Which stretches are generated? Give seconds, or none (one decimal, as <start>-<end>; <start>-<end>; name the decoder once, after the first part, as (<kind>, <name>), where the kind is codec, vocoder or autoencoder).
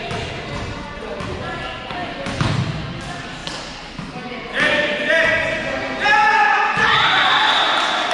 none